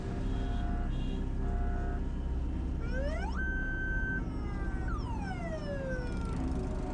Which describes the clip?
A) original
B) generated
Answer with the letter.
A